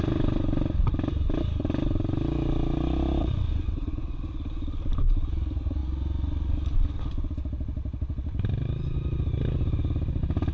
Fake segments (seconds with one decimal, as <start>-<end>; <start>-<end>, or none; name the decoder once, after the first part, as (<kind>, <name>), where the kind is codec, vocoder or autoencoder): 3.2-4.2 (vocoder, WaveNeXt)